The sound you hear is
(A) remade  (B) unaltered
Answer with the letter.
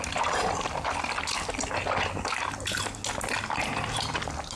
B